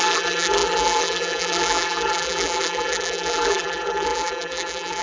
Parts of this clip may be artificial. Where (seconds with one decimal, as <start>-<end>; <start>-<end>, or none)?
0.0-5.0